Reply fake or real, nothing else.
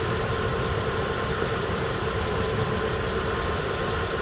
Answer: fake